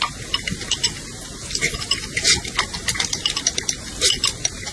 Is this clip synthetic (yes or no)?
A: no